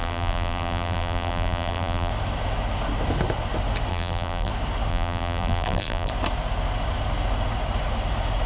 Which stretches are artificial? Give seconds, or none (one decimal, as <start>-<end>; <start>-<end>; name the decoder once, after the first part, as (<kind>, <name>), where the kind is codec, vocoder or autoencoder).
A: 0.0-2.1 (vocoder, BigVGAN v2); 3.9-4.5; 4.9-6.1